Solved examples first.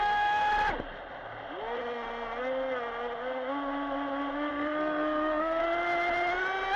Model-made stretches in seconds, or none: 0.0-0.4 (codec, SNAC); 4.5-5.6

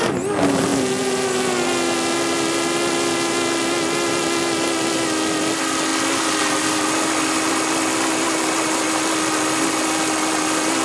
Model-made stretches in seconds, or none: none